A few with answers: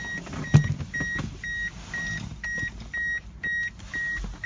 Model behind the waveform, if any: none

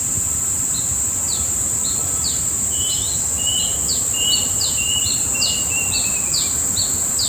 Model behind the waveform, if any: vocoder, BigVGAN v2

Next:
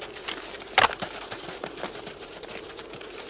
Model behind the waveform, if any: none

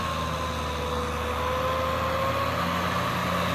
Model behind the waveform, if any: none